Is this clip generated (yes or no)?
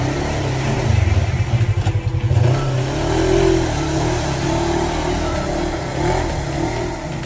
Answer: no